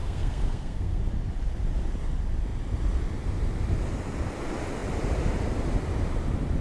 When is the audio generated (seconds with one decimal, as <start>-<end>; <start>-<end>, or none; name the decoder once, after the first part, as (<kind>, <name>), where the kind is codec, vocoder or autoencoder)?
0.0-1.0 (codec, SNAC)

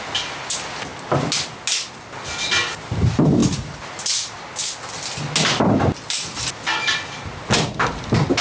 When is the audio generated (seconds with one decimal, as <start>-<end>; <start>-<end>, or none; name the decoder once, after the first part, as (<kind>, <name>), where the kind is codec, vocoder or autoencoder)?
none

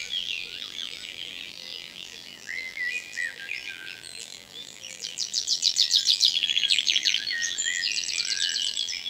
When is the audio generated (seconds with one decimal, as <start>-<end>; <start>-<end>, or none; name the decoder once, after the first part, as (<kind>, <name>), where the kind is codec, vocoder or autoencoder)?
0.0-9.1 (vocoder, BigVGAN v2)

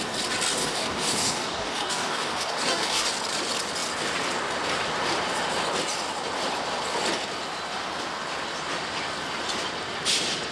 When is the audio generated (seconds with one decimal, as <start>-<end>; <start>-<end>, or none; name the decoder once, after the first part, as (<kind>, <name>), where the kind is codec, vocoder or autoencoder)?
0.5-3.1 (codec, DAC)